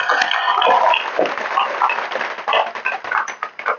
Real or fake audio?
real